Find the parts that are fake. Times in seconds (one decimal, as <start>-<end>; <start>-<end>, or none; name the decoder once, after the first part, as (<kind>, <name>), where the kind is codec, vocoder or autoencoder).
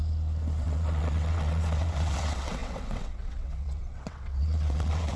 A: 0.6-5.2 (vocoder, WaveNeXt)